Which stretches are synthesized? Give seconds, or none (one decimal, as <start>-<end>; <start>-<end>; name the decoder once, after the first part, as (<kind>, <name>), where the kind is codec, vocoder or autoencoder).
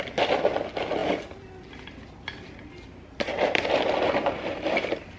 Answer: none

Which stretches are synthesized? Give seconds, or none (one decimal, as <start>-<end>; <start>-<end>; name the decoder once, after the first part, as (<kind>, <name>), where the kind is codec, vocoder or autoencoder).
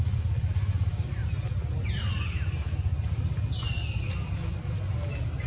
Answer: none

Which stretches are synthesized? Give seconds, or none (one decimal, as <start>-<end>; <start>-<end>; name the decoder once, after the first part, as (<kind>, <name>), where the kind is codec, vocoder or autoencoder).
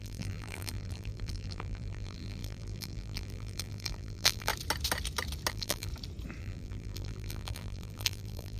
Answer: 0.0-4.5 (vocoder, BigVGAN v2); 5.5-5.9; 6.4-8.6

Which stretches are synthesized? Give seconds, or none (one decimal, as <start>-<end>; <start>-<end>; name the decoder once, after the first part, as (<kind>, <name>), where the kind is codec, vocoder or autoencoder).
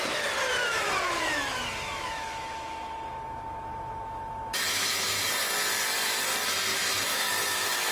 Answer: 0.6-5.3 (autoencoder, DAC-VAE); 6.7-7.9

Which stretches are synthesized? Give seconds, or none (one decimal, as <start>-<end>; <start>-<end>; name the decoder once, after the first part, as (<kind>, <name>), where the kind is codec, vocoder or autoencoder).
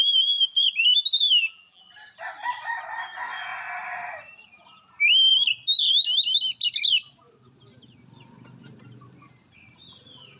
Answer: 1.2-1.8 (vocoder, BigVGAN v2)